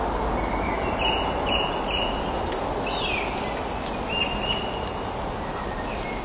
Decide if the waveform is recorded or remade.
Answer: recorded